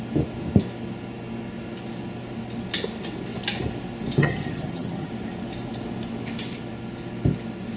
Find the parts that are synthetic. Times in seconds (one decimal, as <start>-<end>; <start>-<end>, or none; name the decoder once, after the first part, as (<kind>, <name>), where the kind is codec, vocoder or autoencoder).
4.2-5.1 (vocoder, HiFi-GAN)